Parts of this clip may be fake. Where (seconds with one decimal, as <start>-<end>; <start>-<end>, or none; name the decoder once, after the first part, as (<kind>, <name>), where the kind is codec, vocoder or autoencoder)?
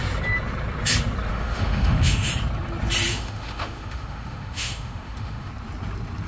1.3-2.3 (autoencoder, DAC-VAE); 3.1-5.5